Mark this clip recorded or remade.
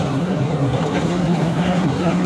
remade